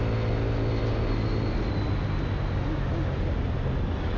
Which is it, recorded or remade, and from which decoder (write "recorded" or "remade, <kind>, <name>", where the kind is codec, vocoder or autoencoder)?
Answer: recorded